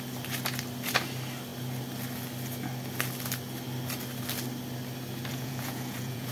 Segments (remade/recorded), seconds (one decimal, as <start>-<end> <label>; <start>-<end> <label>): 0.0-5.3 recorded; 5.3-6.3 remade